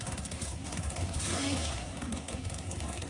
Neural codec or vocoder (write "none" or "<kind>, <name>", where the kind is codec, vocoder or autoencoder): codec, SNAC